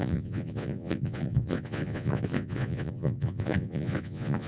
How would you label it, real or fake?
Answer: fake